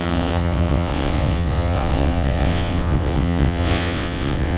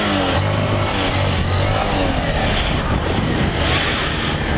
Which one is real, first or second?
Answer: second